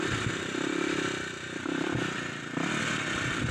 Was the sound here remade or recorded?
remade